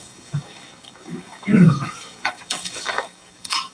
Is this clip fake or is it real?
fake